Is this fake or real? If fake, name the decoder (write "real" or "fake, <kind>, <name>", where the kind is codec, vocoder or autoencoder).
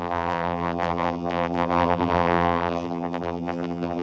fake, vocoder, BigVGAN v2